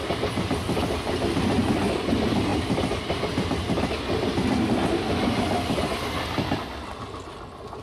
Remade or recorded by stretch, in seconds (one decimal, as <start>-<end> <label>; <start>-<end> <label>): 0.0-7.8 recorded